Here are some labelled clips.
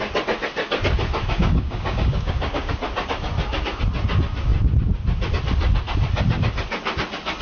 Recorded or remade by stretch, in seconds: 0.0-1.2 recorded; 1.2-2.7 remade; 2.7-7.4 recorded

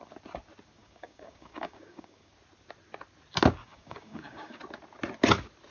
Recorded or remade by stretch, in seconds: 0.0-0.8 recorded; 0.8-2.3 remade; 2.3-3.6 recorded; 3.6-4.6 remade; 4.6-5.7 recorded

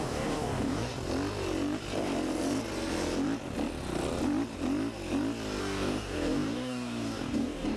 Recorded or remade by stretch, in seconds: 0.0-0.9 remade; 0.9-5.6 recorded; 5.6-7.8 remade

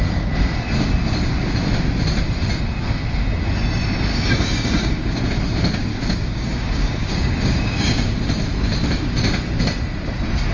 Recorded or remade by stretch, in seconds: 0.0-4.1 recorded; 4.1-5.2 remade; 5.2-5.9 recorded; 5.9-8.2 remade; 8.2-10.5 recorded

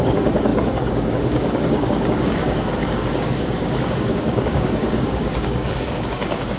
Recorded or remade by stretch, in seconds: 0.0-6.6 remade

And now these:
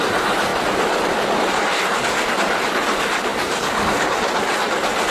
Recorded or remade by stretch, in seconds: 0.0-3.3 recorded; 3.3-4.1 remade; 4.1-5.1 recorded

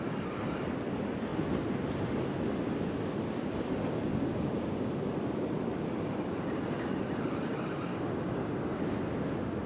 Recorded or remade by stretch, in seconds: 0.0-4.1 recorded; 4.1-4.9 remade; 4.9-7.9 recorded; 7.9-8.6 remade; 8.6-9.7 recorded

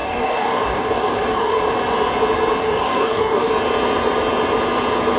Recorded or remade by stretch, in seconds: 0.0-1.6 remade; 1.6-2.6 recorded; 2.6-3.5 remade; 3.5-5.2 recorded